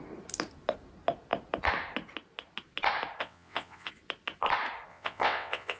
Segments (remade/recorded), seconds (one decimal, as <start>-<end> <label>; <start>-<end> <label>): 0.0-3.2 recorded; 3.2-3.9 remade; 3.9-4.9 recorded; 4.9-5.8 remade